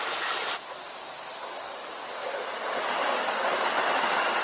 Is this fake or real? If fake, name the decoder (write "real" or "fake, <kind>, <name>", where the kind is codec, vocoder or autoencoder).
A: real